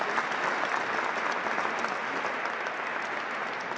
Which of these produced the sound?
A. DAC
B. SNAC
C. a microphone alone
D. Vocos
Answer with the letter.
C